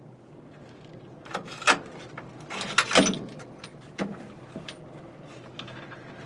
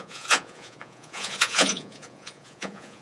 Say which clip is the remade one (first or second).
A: second